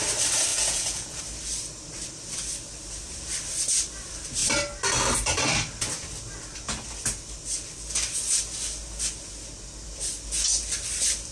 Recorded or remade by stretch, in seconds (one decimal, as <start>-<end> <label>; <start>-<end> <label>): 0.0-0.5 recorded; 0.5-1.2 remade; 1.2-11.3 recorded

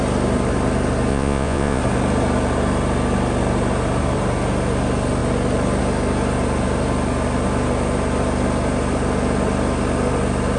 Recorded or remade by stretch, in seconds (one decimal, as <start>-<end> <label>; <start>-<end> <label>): 0.0-1.1 recorded; 1.1-1.8 remade; 1.8-10.6 recorded

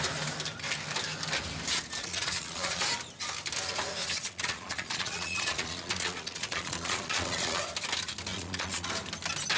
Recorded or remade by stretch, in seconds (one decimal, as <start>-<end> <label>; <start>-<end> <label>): 0.0-2.0 recorded; 2.0-2.8 remade; 2.8-4.0 recorded; 4.0-7.6 remade; 7.6-8.3 recorded; 8.3-8.9 remade; 8.9-9.6 recorded

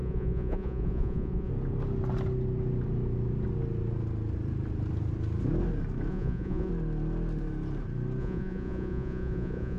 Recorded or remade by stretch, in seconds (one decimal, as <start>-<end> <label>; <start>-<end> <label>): 0.0-1.5 remade; 1.5-6.1 recorded; 6.1-6.7 remade; 6.7-8.2 recorded; 8.2-9.8 remade